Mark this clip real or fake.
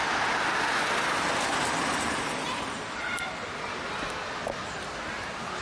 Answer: real